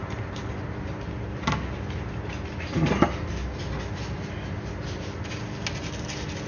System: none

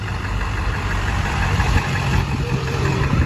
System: vocoder, BigVGAN v2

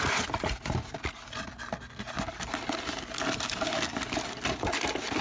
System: none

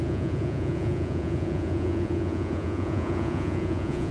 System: vocoder, Vocos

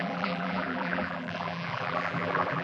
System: vocoder, BigVGAN v2